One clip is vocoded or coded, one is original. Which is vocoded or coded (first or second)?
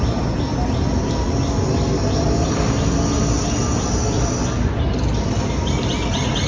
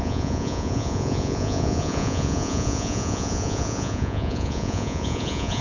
second